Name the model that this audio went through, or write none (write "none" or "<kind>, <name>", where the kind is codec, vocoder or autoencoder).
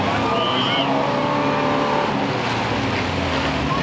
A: none